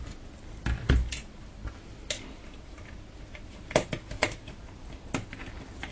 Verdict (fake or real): real